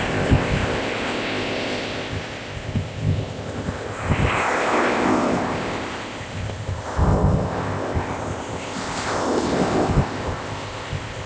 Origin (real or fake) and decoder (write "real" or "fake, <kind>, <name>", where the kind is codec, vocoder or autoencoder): fake, codec, ZipCodec